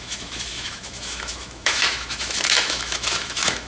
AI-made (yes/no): yes